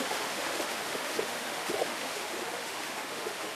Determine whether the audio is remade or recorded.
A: remade